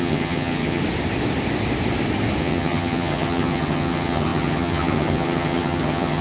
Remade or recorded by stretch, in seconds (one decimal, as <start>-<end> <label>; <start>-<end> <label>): 0.0-0.8 remade; 0.8-2.4 recorded; 2.4-6.2 remade